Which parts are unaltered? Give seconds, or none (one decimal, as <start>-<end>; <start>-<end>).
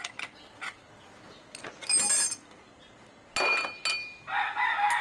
0.0-5.0